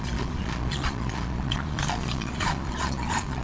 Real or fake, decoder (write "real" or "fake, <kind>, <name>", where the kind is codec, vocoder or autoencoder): fake, vocoder, Vocos